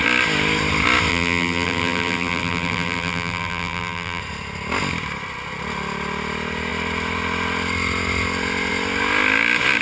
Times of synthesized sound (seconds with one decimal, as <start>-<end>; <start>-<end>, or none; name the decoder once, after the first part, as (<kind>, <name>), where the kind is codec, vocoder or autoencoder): 1.1-4.2 (vocoder, BigVGAN v2)